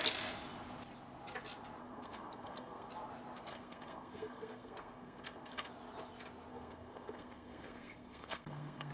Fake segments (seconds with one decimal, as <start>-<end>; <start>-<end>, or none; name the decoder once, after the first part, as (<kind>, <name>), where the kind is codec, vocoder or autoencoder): 1.8-2.9 (codec, SNAC); 3.5-5.7; 6.5-8.9